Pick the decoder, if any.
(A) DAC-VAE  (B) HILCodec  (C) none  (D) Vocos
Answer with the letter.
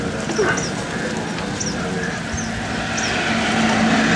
C